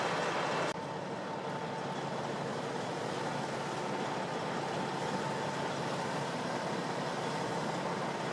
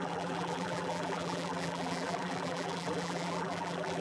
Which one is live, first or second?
first